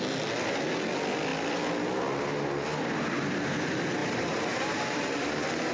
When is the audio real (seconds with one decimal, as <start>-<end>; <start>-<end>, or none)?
0.0-4.0; 5.1-5.7